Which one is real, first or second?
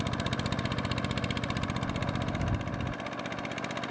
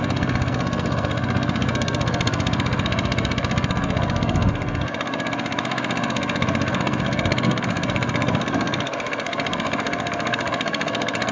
first